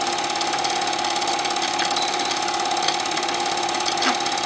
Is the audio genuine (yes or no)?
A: no